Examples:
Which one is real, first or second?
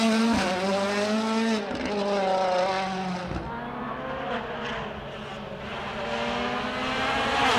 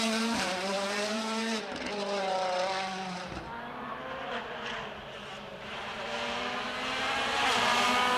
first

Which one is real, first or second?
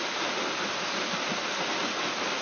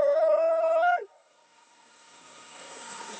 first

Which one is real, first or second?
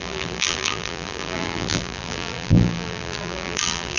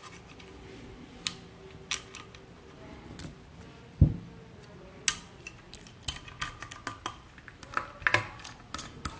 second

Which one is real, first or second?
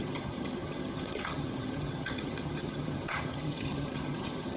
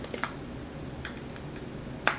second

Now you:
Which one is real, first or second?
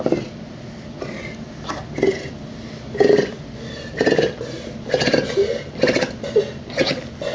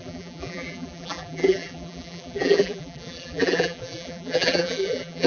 first